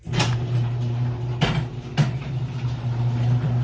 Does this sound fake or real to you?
real